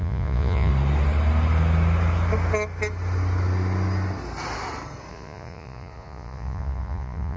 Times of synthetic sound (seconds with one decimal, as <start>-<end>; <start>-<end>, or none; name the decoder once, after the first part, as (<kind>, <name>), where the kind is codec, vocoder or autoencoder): 0.0-0.7 (vocoder, Vocos); 5.1-7.4